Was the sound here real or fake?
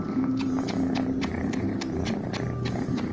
fake